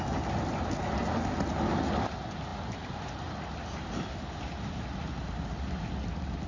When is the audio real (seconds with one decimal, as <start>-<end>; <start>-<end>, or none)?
0.0-6.5